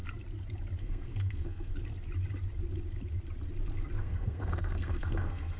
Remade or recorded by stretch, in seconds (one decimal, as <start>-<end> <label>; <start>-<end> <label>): 0.0-0.8 recorded; 0.8-1.7 remade; 1.7-4.0 recorded; 4.0-5.6 remade